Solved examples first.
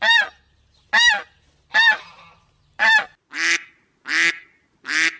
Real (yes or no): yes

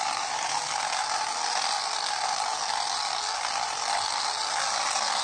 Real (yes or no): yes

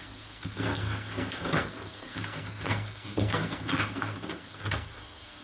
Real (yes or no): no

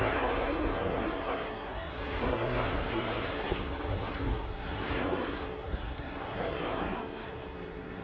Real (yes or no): no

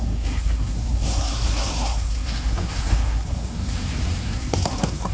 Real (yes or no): no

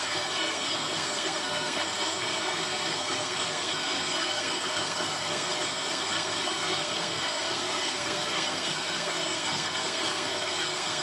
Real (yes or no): no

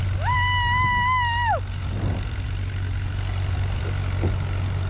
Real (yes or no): yes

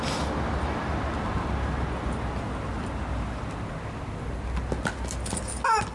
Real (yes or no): yes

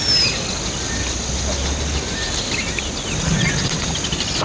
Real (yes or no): yes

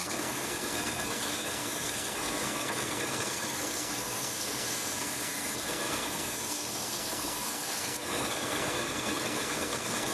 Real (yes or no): no